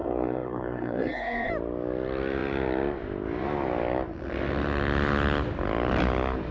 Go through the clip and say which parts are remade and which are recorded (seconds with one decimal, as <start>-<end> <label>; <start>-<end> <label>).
0.0-1.5 remade; 1.5-6.5 recorded